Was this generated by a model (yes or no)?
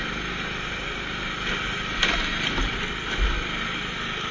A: no